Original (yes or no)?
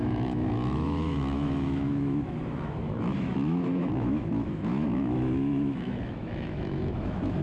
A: no